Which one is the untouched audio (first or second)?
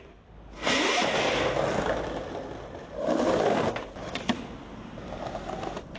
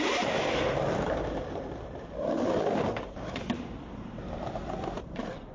first